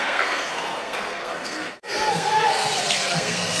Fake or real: fake